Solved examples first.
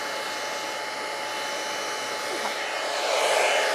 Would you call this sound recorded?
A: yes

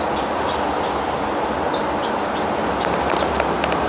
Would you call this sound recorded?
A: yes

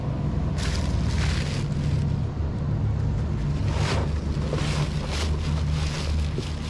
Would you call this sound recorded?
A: yes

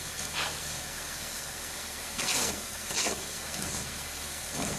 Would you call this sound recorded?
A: no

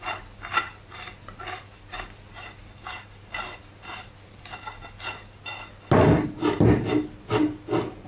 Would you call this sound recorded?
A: yes